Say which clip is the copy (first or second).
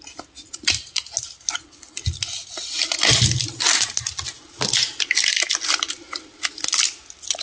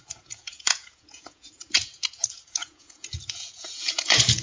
second